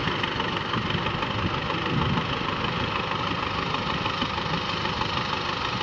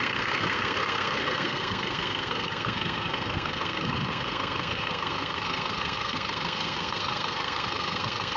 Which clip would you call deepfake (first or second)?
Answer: second